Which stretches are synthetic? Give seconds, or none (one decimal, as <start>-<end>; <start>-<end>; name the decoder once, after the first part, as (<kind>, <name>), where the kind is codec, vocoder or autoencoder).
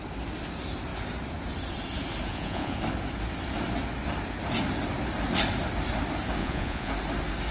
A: 2.3-2.8 (vocoder, Vocos); 6.4-6.9